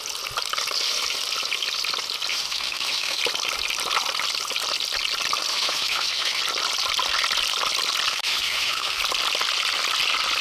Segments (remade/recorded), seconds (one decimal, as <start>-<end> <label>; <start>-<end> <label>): 0.0-2.3 recorded; 2.3-3.2 remade; 3.2-5.5 recorded; 5.5-6.4 remade; 6.4-8.1 recorded; 8.1-9.0 remade; 9.0-10.4 recorded